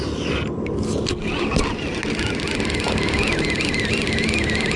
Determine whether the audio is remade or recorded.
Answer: recorded